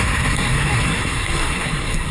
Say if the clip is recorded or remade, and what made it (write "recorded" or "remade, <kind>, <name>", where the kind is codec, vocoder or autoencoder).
remade, codec, SNAC